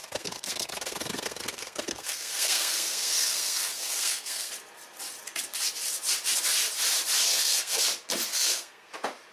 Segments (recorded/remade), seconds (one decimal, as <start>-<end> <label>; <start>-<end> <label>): 0.0-4.5 remade; 4.5-7.3 recorded; 7.3-7.8 remade; 7.8-8.3 recorded; 8.3-8.9 remade; 8.9-9.3 recorded